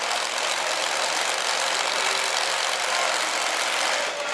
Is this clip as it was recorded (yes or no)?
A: yes